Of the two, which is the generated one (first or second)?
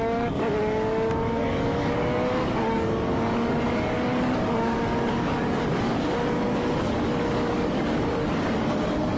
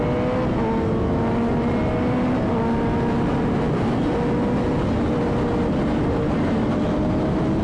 first